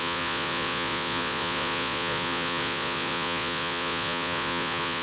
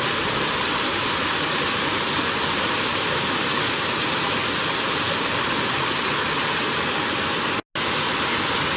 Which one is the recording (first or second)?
second